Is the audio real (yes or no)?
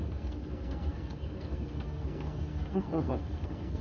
no